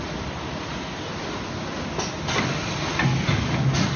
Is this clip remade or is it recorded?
recorded